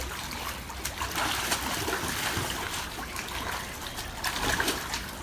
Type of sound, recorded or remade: recorded